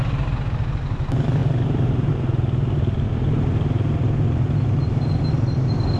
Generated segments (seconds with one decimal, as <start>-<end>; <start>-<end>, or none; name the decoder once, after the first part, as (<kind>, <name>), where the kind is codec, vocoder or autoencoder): 1.4-2.1 (vocoder, BigVGAN v2)